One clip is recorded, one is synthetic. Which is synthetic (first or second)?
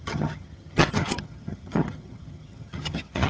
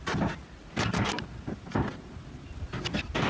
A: first